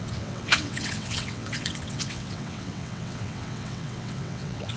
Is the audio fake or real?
fake